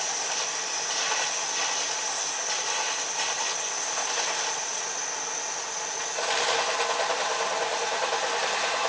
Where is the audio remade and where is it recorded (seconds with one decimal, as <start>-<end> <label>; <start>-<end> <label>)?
0.0-8.9 recorded